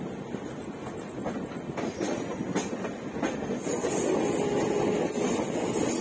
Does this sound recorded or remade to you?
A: recorded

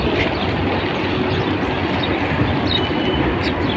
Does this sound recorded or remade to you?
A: recorded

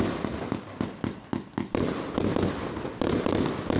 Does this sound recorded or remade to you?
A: recorded